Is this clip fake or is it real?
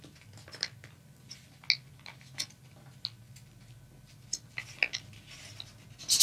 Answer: real